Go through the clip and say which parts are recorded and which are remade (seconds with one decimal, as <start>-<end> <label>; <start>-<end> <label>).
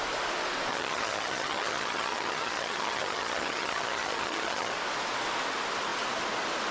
0.0-0.7 recorded; 0.7-4.7 remade; 4.7-6.7 recorded